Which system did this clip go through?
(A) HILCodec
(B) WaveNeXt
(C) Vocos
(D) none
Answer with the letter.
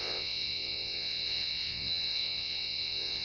B